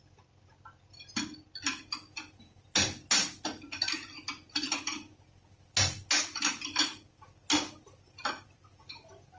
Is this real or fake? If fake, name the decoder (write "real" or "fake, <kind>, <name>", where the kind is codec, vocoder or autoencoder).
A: real